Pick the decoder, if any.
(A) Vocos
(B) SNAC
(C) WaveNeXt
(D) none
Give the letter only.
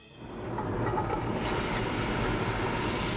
D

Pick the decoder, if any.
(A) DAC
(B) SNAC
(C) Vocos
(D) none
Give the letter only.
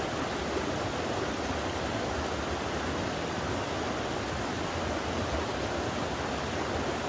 D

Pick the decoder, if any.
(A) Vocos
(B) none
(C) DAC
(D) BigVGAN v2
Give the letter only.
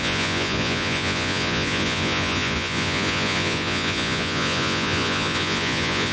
A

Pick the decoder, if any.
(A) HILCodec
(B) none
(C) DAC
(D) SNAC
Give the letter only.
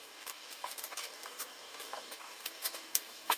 C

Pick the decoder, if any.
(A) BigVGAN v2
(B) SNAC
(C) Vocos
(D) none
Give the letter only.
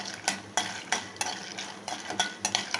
D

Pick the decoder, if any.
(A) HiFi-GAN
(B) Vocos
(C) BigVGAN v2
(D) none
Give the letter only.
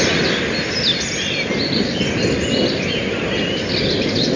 D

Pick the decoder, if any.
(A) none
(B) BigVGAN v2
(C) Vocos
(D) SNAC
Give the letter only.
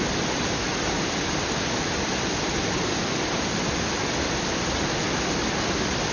A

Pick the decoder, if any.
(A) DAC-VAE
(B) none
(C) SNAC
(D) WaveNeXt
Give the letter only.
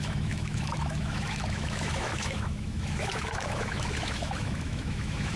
A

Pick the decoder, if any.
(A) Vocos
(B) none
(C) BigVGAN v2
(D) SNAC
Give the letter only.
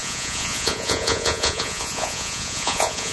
A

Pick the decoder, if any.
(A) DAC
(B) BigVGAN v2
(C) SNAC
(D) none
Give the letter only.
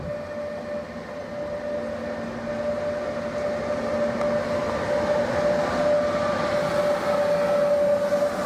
D